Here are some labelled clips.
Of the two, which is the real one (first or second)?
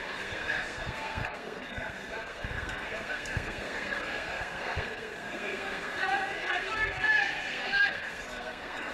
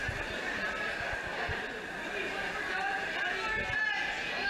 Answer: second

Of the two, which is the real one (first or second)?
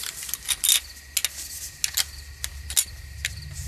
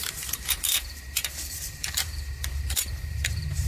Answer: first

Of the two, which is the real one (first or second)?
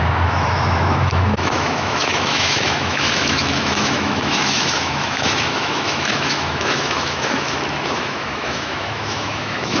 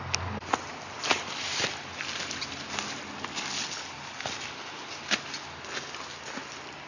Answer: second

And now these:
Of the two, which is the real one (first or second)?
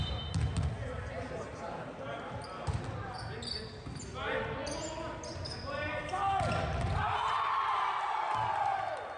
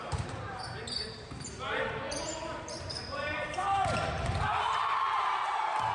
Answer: first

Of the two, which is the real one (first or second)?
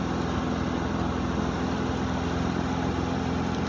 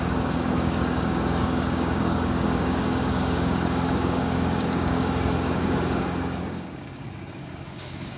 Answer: first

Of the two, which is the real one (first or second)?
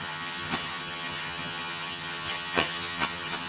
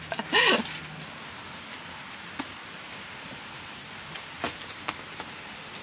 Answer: second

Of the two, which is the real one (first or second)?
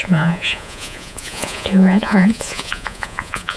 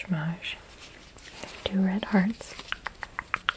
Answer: second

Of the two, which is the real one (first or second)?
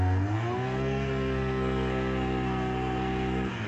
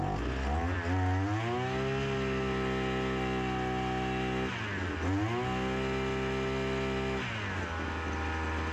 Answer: second